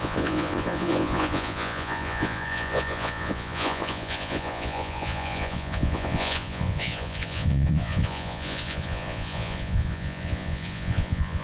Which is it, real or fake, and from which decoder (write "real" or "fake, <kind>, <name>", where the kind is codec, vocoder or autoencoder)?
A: fake, vocoder, Vocos